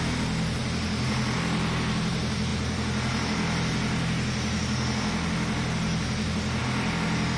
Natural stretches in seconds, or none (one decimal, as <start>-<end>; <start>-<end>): 0.0-7.4